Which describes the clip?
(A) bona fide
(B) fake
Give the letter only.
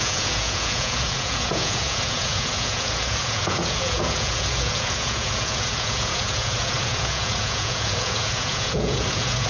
B